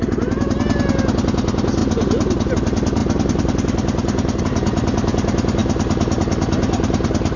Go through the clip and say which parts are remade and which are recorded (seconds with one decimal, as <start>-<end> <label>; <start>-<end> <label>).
0.0-7.4 recorded